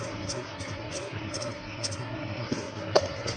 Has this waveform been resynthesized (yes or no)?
yes